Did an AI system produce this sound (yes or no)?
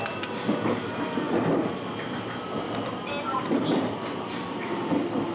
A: no